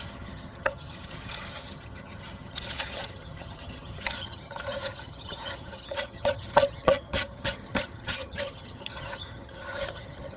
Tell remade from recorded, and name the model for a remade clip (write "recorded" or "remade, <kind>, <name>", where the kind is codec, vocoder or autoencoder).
remade, vocoder, HiFi-GAN